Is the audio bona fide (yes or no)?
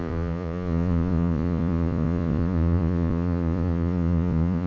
no